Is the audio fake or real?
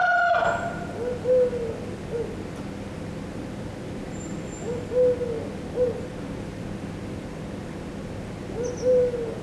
real